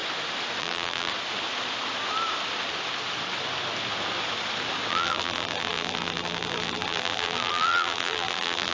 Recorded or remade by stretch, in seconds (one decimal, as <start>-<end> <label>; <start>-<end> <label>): 0.0-0.6 recorded; 0.6-1.1 remade; 1.1-4.9 recorded; 4.9-8.7 remade

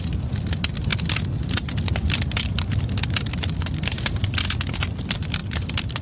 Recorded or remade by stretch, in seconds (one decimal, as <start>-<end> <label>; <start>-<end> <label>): 0.0-5.4 recorded; 5.4-6.0 remade